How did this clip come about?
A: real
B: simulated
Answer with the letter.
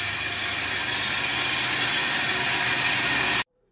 A